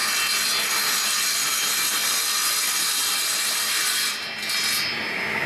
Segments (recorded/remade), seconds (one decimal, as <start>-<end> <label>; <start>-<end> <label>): 0.0-5.5 recorded